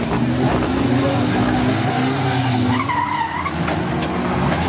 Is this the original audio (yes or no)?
yes